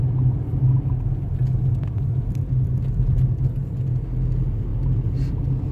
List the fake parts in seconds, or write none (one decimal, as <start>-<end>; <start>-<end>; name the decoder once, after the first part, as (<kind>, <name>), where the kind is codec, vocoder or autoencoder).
none